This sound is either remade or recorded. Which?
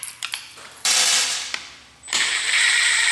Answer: remade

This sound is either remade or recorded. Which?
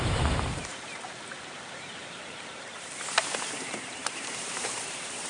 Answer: remade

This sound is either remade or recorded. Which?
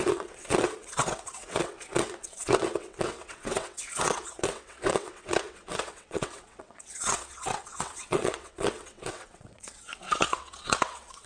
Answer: remade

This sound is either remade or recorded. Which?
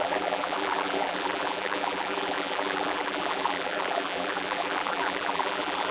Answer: remade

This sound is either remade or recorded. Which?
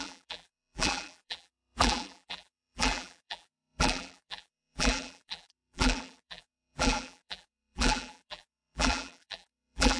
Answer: remade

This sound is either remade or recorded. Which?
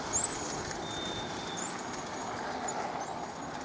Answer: recorded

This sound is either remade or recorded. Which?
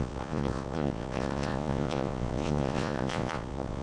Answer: remade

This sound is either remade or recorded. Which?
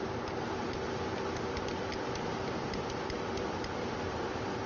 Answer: recorded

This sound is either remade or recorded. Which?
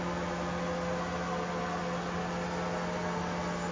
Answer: recorded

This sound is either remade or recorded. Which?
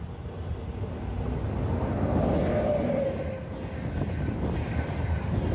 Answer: recorded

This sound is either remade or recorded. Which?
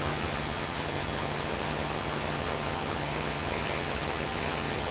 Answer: remade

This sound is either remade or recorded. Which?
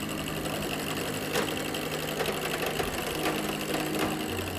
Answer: recorded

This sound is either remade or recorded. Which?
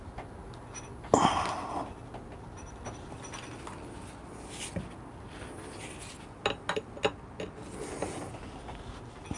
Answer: recorded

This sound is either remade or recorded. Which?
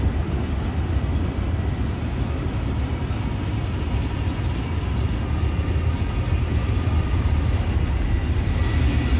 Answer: recorded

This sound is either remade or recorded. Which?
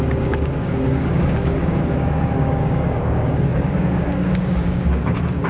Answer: remade